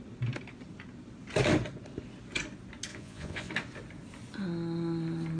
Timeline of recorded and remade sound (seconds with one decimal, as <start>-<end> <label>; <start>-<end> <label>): 0.0-2.9 recorded; 2.9-3.5 remade; 3.5-5.4 recorded

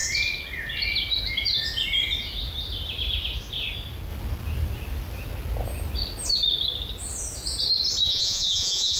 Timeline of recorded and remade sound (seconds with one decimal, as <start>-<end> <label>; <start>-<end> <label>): 0.0-8.1 recorded; 8.1-9.0 remade